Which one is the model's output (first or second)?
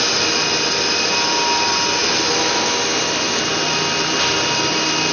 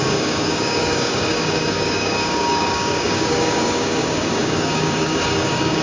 second